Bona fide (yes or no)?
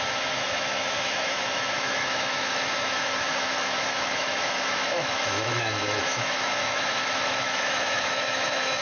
no